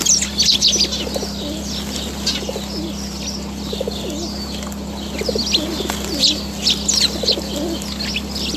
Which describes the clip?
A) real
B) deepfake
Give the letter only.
A